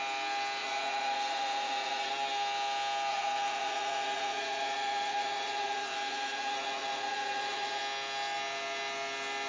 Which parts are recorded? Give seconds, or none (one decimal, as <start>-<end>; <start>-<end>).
0.0-0.6; 2.1-3.1; 7.8-9.5